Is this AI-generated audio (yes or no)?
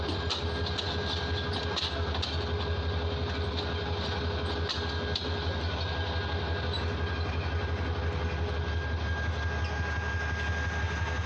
no